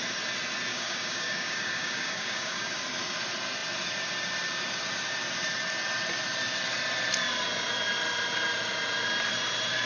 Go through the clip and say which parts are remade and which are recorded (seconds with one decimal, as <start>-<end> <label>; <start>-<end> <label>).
0.0-0.7 recorded; 0.7-2.7 remade; 2.7-9.9 recorded